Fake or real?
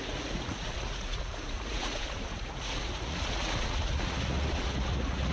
fake